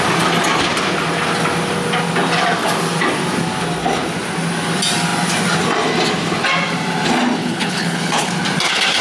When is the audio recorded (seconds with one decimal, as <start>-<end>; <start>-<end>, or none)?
0.0-7.4; 8.3-9.0